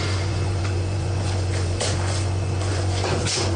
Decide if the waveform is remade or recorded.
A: remade